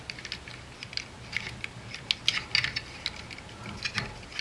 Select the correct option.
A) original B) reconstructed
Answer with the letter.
A